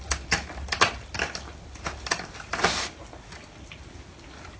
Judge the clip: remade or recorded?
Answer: recorded